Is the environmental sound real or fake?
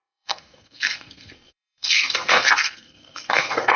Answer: fake